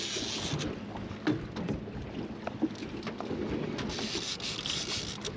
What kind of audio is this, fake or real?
real